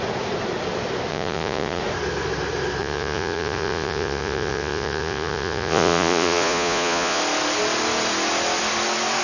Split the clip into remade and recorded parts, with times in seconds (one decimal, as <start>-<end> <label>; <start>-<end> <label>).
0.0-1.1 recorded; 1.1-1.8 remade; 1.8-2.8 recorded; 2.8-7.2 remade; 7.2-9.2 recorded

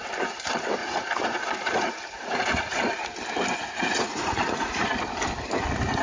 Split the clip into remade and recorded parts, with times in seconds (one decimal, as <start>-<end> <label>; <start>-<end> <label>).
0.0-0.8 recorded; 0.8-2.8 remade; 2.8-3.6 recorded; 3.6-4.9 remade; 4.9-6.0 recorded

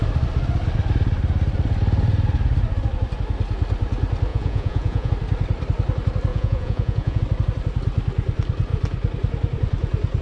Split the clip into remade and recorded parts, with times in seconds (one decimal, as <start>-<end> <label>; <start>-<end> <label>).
0.0-4.3 recorded; 4.3-5.1 remade; 5.1-6.3 recorded; 6.3-7.2 remade; 7.2-10.2 recorded